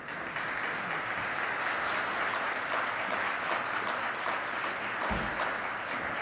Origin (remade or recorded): recorded